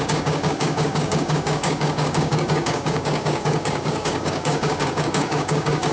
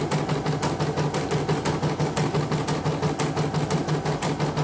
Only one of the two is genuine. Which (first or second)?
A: second